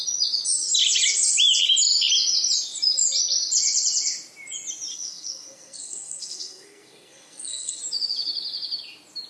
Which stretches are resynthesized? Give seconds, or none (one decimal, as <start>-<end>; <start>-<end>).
4.9-7.8